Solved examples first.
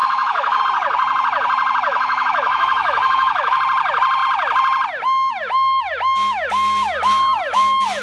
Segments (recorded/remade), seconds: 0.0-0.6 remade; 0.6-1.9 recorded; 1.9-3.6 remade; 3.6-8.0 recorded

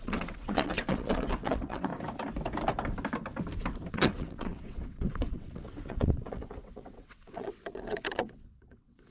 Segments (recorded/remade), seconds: 0.0-1.9 remade; 1.9-3.9 recorded; 3.9-9.1 remade

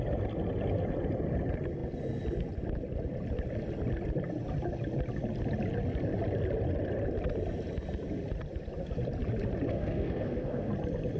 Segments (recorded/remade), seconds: 0.0-9.7 recorded; 9.7-10.7 remade; 10.7-11.2 recorded

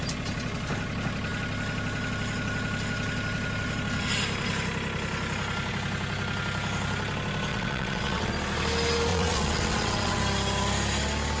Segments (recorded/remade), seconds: 0.0-7.5 recorded; 7.5-8.3 remade; 8.3-9.1 recorded; 9.1-10.2 remade; 10.2-11.4 recorded

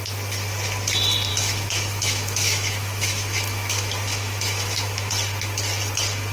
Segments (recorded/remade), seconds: 0.0-1.3 recorded; 1.3-5.1 remade; 5.1-6.3 recorded